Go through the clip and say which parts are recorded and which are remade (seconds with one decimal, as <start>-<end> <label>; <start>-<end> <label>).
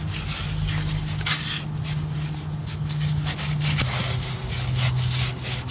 0.0-2.6 recorded; 2.6-4.0 remade; 4.0-5.7 recorded